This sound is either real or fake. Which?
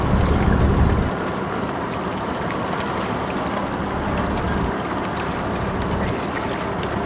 real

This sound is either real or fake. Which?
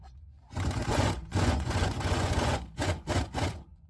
fake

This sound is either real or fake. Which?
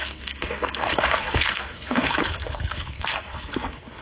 fake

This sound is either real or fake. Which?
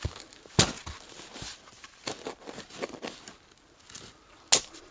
real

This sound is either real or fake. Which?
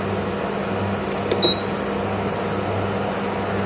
real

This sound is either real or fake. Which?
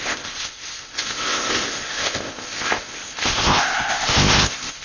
fake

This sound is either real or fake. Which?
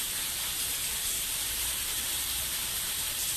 fake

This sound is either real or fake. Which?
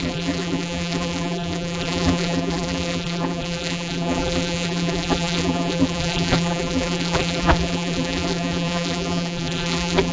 fake